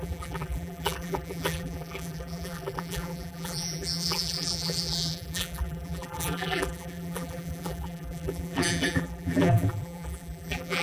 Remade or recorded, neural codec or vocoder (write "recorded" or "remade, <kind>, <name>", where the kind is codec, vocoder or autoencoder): remade, vocoder, BigVGAN v2